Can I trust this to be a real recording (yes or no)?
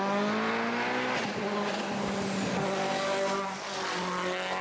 yes